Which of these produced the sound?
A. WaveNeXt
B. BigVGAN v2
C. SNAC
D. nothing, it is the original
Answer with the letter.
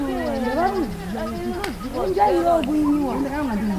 D